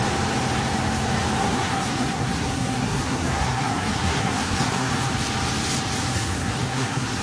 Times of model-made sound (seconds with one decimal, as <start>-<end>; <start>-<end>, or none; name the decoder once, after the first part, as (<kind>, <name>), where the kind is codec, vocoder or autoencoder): 1.4-4.9 (codec, SNAC); 6.0-7.2